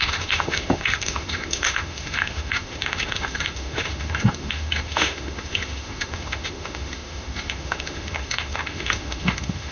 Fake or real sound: fake